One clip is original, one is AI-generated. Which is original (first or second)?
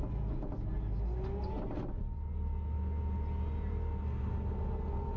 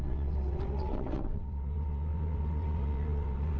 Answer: first